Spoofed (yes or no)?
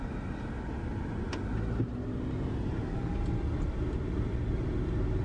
no